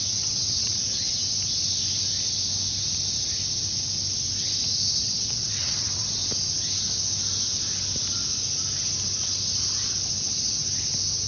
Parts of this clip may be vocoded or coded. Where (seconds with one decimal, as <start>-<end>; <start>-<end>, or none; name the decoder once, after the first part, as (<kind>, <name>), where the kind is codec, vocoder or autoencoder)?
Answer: 0.0-0.8 (vocoder, WaveNeXt); 5.0-6.2